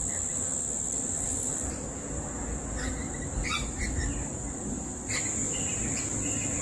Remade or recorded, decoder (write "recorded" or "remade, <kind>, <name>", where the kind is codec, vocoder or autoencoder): recorded